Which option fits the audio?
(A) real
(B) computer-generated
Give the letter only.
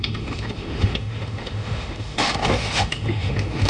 B